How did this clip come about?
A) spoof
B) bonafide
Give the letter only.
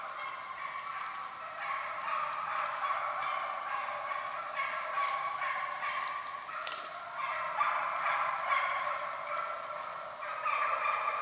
B